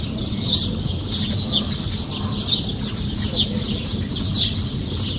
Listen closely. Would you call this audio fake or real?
real